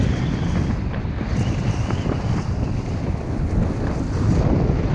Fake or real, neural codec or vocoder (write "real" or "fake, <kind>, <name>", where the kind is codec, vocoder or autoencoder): real